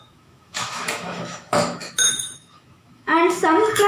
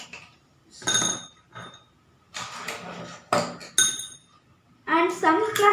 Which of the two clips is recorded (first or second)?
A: second